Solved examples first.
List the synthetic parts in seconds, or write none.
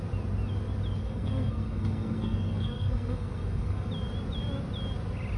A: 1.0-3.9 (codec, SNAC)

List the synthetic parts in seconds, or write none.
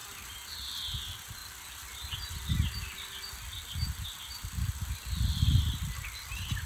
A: 0.0-6.7 (vocoder, BigVGAN v2)